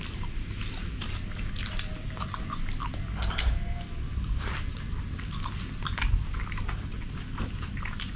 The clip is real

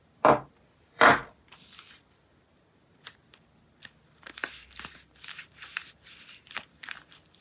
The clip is fake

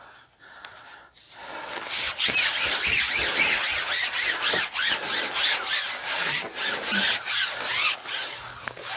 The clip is real